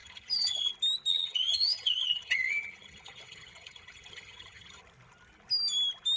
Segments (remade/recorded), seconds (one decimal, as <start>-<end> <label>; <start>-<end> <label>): 0.0-0.7 remade; 0.7-1.1 recorded; 1.1-4.8 remade; 4.8-6.2 recorded